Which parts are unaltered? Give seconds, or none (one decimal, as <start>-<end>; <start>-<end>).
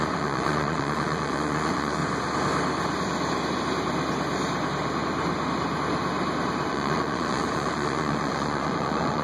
2.0-6.7